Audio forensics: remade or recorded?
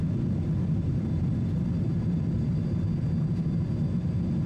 recorded